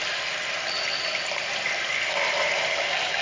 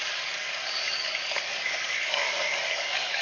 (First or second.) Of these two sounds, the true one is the first